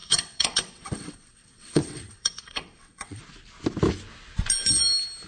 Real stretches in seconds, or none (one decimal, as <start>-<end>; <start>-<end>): 3.2-5.3